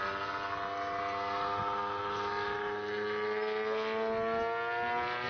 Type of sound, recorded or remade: recorded